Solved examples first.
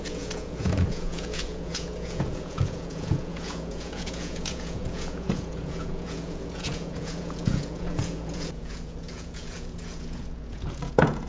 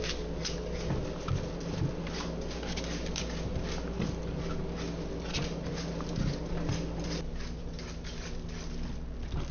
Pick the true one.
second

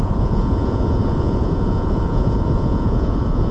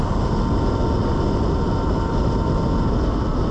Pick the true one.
second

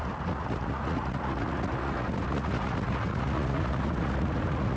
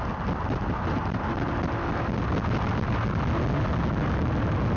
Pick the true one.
second